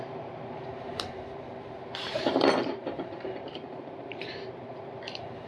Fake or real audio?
fake